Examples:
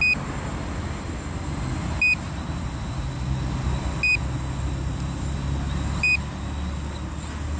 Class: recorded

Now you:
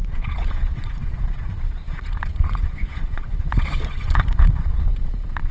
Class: remade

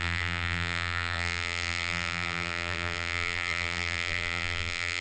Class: remade